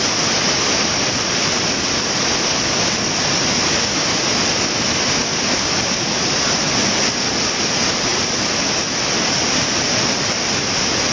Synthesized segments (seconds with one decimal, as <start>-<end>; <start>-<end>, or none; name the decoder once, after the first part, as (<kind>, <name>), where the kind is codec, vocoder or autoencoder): none